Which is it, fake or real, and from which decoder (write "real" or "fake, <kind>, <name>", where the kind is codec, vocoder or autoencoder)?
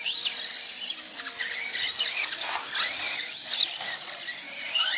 real